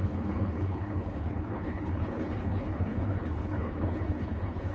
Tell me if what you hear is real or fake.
fake